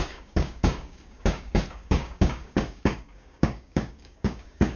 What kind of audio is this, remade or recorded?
remade